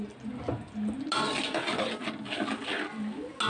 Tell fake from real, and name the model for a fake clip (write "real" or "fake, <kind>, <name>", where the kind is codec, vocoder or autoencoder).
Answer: real